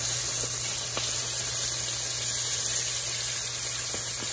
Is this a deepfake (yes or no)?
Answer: no